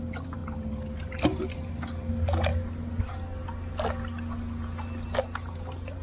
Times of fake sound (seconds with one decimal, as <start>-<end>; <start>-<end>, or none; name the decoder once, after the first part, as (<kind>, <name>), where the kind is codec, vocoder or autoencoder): none